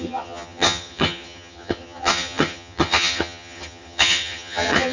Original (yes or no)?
no